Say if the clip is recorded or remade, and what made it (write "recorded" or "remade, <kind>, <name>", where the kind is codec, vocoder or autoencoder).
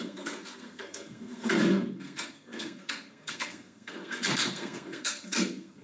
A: remade, codec, SNAC